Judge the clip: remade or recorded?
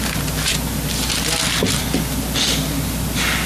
recorded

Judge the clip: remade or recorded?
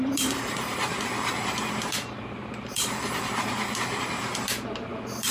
remade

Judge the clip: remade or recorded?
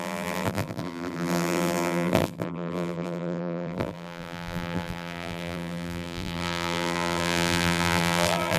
remade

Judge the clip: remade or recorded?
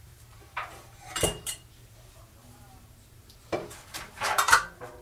remade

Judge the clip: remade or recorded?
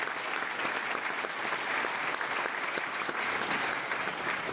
remade